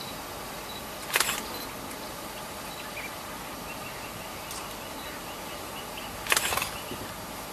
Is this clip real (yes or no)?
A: yes